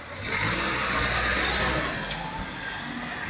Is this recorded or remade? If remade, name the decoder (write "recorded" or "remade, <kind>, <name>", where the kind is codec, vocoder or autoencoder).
recorded